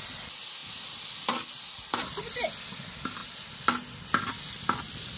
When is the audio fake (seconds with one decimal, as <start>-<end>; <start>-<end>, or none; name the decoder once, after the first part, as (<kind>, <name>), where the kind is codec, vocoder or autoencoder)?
none